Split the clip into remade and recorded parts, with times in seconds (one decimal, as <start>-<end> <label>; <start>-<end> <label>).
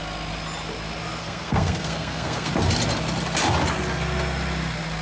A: 0.0-1.2 recorded; 1.2-2.5 remade; 2.5-5.0 recorded